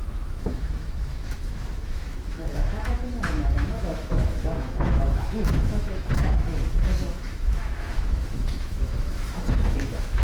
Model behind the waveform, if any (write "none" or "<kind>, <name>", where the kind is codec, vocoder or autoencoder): autoencoder, DAC-VAE